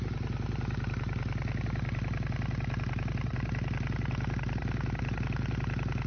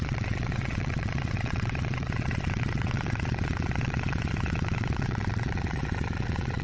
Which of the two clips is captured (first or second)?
first